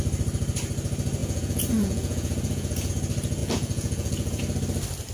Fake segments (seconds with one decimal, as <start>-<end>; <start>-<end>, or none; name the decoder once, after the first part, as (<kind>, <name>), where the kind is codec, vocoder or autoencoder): 1.2-2.9 (vocoder, Vocos); 3.4-4.4